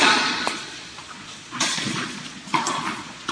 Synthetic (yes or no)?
yes